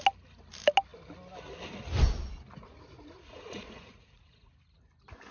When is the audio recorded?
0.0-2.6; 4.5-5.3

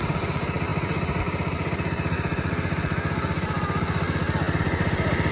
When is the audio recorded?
0.0-5.3